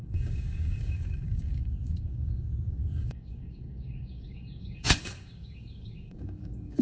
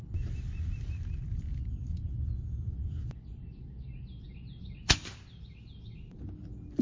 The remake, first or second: first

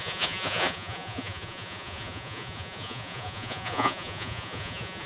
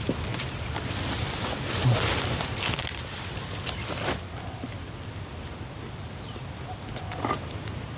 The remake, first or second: first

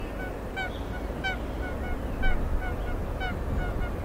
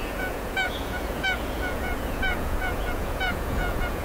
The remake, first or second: second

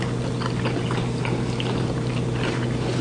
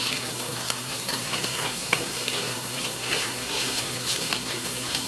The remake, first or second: second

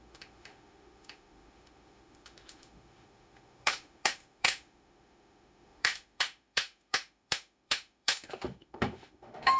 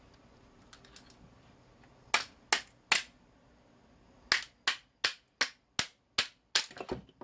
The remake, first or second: first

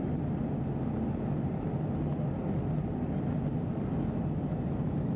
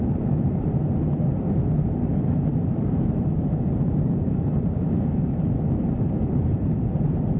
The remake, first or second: second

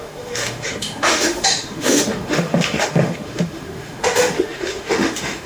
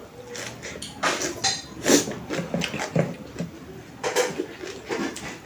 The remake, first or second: first